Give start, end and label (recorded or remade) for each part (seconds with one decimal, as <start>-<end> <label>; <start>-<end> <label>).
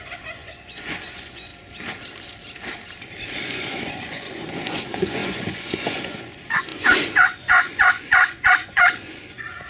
0.0-1.5 remade; 1.5-3.4 recorded; 3.4-9.7 remade